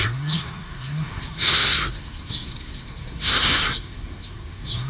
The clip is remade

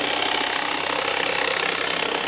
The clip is recorded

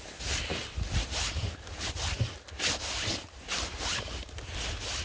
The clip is recorded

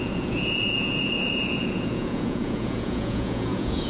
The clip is remade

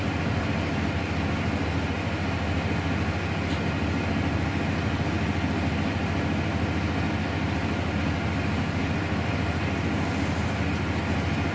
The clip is recorded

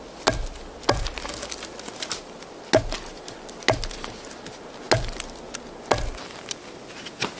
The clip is recorded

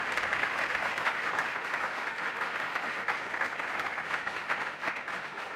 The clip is remade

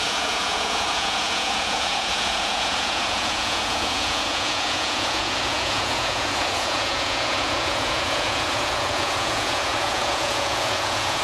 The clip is remade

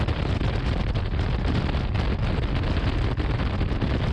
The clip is recorded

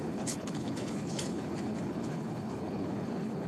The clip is remade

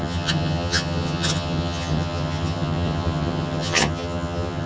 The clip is remade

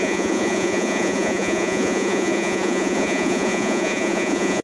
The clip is remade